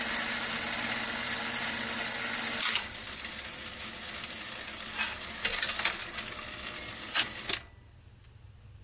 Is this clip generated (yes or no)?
no